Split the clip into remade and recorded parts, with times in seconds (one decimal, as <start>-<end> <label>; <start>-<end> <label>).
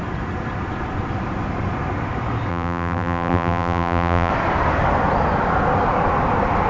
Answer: 0.0-2.5 recorded; 2.5-4.3 remade; 4.3-6.7 recorded